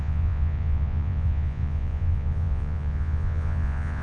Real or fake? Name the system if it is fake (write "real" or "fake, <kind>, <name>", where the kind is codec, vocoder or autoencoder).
fake, vocoder, Vocos